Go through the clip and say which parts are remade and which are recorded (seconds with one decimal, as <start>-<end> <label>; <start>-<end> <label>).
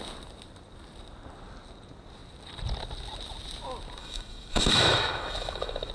0.0-4.0 recorded; 4.0-5.9 remade